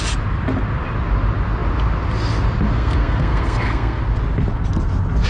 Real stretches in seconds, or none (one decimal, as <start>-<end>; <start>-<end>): 0.0-2.7; 4.0-5.3